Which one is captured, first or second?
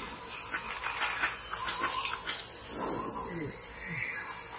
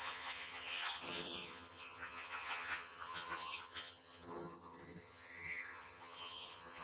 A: first